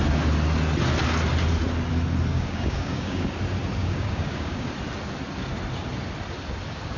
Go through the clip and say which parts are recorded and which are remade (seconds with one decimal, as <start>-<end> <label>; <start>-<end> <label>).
0.0-2.3 recorded; 2.3-3.3 remade; 3.3-3.8 recorded; 3.8-4.7 remade; 4.7-7.0 recorded